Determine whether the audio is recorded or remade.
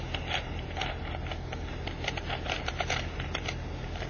recorded